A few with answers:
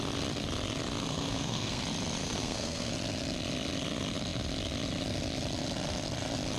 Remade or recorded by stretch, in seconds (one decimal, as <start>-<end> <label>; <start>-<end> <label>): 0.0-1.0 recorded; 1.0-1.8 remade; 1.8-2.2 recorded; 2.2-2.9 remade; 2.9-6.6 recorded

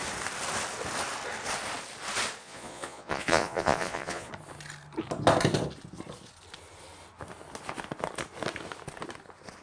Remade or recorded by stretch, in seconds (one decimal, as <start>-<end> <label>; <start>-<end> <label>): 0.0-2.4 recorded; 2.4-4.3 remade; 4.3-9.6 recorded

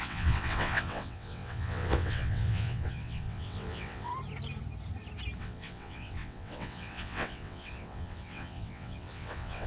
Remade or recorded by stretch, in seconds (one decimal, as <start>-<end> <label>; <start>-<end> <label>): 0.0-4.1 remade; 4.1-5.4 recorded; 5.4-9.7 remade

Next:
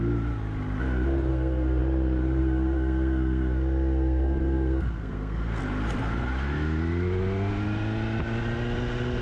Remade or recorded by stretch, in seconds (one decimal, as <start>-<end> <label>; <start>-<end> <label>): 0.0-1.3 recorded; 1.3-1.8 remade; 1.8-2.4 recorded; 2.4-5.6 remade; 5.6-9.2 recorded

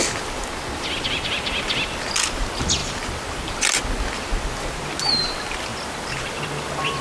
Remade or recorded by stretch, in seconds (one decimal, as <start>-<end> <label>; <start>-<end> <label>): 0.0-2.8 recorded; 2.8-3.4 remade; 3.4-5.7 recorded; 5.7-7.0 remade

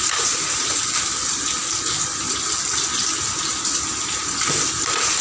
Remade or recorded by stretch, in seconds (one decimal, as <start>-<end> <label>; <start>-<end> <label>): 0.0-5.2 recorded

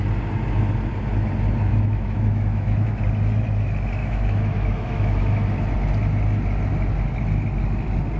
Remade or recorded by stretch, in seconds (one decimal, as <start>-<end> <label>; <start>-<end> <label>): 0.0-1.7 recorded; 1.7-3.0 remade; 3.0-4.0 recorded; 4.0-5.2 remade; 5.2-8.2 recorded

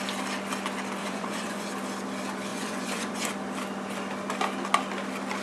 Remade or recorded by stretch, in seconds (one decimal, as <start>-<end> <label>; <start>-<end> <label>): 0.0-1.0 recorded; 1.0-1.7 remade; 1.7-2.5 recorded; 2.5-3.3 remade; 3.3-5.4 recorded